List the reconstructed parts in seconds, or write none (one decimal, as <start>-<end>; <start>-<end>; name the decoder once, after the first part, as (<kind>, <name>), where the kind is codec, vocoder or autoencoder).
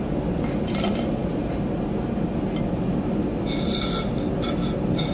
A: none